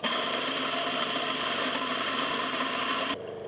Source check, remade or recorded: remade